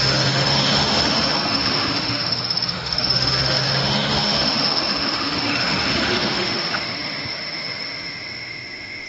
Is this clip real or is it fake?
fake